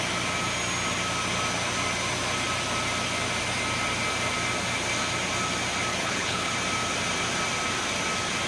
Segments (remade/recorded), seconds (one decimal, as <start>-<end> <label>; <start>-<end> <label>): 0.0-5.9 recorded; 5.9-6.5 remade; 6.5-8.5 recorded